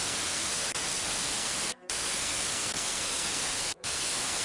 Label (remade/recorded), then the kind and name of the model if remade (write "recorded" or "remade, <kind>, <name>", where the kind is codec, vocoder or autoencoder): remade, codec, SNAC